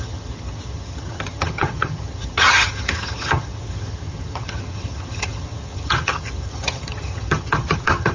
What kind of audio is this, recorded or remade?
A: remade